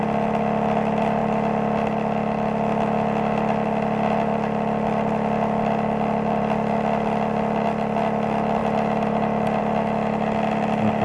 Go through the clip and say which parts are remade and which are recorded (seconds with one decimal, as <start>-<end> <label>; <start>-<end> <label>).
0.0-11.0 recorded